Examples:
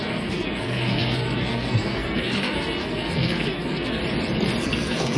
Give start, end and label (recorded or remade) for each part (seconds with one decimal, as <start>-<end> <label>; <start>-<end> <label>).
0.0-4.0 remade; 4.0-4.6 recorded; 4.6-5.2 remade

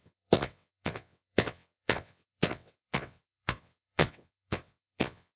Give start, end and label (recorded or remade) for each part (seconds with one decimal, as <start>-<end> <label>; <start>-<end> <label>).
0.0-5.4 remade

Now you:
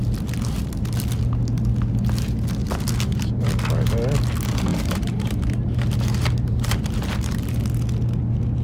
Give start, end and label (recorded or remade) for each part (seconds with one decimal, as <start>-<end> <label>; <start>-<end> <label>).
0.0-4.7 recorded; 4.7-7.6 remade; 7.6-8.6 recorded

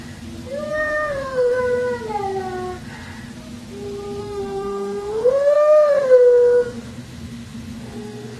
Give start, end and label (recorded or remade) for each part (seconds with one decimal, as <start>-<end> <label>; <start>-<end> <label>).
0.0-0.7 recorded; 0.7-1.6 remade; 1.6-4.2 recorded; 4.2-8.4 remade

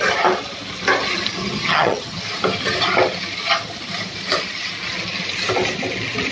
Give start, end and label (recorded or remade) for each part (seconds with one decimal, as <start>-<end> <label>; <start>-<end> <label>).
0.0-1.4 recorded; 1.4-2.2 remade; 2.2-6.3 recorded

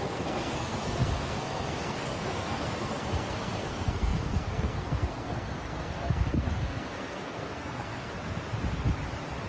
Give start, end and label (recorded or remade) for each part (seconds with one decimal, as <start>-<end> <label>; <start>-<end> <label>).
0.0-8.1 remade; 8.1-9.5 recorded